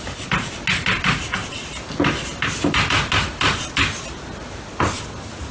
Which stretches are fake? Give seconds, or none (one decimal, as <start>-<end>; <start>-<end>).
none